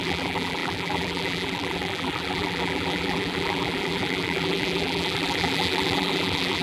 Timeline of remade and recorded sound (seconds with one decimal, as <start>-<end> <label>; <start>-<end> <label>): 0.0-6.6 remade